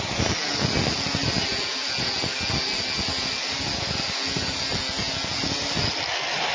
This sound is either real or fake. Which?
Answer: real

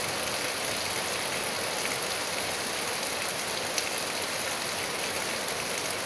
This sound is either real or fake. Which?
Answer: real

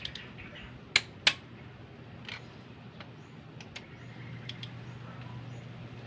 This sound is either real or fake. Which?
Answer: real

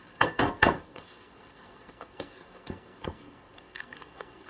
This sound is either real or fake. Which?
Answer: fake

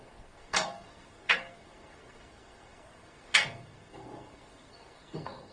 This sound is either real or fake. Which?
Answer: fake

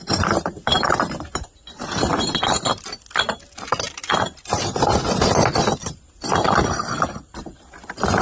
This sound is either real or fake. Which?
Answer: real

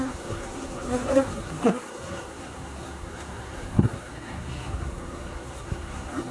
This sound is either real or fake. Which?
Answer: fake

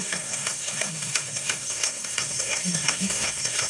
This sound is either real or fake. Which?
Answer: fake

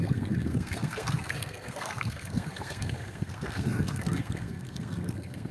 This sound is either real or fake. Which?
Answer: fake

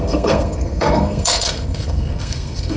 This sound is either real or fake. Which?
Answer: fake